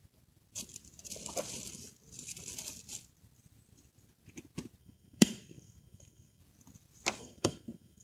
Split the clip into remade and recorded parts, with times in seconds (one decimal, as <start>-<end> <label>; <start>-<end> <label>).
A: 0.0-4.8 recorded; 4.8-6.4 remade; 6.4-7.2 recorded; 7.2-8.0 remade